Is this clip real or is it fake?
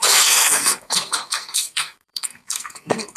fake